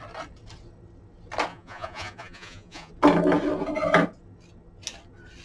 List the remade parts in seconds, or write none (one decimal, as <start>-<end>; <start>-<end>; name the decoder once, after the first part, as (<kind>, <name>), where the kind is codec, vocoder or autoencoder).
1.5-2.9 (vocoder, Vocos)